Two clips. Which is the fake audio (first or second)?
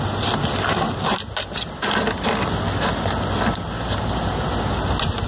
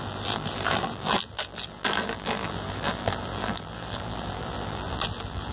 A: second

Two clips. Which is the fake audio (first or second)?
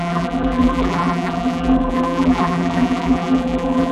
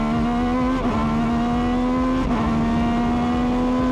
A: first